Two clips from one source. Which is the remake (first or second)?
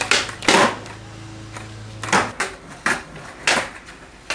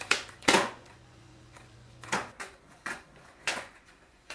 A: second